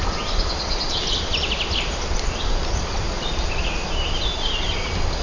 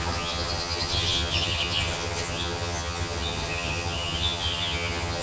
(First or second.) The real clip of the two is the first